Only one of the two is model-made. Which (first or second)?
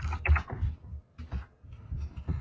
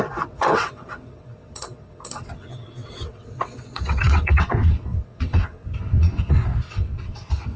second